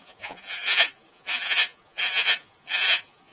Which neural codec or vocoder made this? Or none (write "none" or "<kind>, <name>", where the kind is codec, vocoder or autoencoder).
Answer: vocoder, Vocos